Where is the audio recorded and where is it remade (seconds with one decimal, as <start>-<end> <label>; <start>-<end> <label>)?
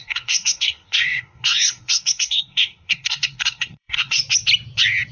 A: 0.0-4.2 remade; 4.2-5.1 recorded